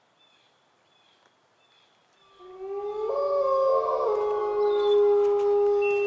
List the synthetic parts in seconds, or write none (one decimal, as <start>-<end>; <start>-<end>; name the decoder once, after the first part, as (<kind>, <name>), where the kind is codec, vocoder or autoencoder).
none